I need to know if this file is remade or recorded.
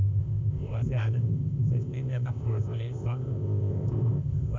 remade